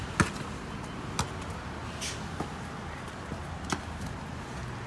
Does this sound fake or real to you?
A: real